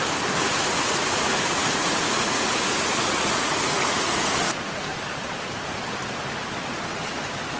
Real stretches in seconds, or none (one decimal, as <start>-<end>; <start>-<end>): 0.0-0.4; 5.0-7.6